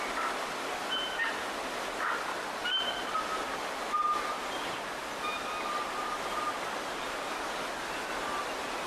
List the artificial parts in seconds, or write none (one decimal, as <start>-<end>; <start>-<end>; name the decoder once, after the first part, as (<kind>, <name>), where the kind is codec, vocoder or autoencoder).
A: none